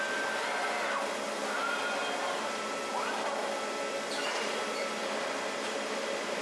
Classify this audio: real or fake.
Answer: real